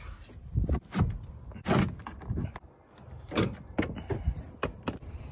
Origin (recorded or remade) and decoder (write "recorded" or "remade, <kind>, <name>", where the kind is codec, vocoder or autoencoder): recorded